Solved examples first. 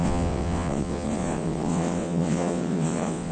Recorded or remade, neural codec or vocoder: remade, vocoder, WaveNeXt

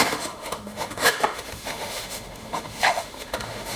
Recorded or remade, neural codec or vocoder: remade, autoencoder, DAC-VAE